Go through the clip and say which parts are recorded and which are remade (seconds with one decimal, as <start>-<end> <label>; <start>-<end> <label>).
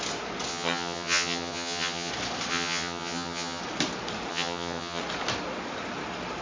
0.0-0.5 recorded; 0.5-2.1 remade; 2.1-2.5 recorded; 2.5-3.6 remade; 3.6-4.3 recorded; 4.3-5.0 remade; 5.0-6.4 recorded